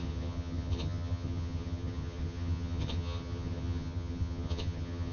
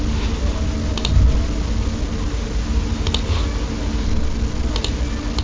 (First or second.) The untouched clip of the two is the second